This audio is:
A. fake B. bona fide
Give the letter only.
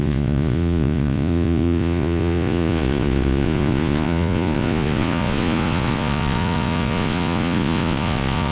A